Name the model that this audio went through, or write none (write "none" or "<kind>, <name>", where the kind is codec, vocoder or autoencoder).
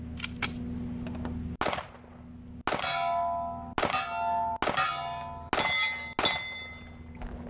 none